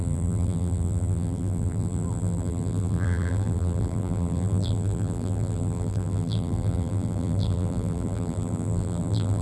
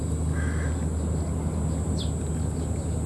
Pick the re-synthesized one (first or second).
first